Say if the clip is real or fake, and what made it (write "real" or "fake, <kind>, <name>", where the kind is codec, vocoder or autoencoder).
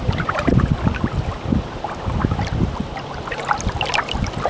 real